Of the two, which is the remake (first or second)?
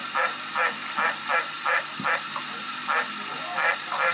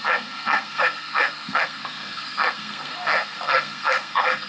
second